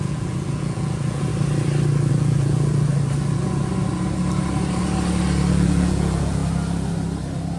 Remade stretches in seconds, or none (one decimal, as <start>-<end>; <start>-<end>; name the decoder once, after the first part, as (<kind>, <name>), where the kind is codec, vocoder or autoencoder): 0.0-1.3 (vocoder, Vocos); 2.1-2.9; 5.5-6.4